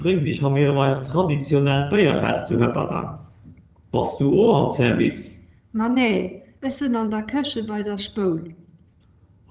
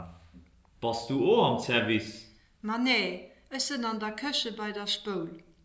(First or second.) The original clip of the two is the second